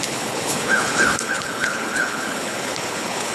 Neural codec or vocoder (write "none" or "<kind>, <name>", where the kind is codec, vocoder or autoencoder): codec, HILCodec